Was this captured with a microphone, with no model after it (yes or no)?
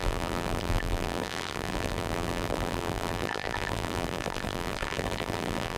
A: no